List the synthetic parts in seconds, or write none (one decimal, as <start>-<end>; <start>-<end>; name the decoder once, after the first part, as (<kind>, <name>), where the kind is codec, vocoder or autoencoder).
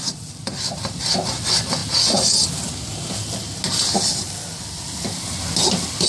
0.0-1.8 (vocoder, BigVGAN v2); 4.6-6.1